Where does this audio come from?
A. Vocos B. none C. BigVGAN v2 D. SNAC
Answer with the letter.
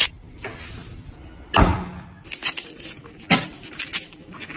B